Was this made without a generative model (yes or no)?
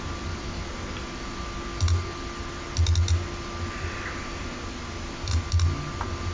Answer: yes